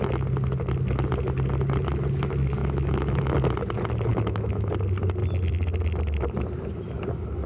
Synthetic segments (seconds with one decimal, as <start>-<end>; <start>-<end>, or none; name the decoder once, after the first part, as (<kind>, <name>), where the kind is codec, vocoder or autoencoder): 2.6-3.5 (autoencoder, DAC-VAE); 4.1-4.7